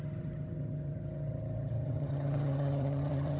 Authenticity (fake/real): fake